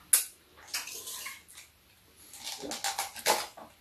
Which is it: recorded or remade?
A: recorded